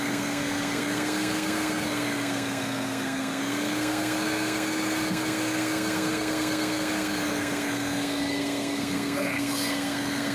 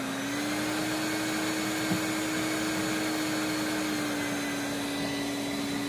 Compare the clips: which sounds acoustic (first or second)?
second